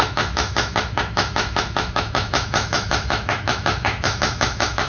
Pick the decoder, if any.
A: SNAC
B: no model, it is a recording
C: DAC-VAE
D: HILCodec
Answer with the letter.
C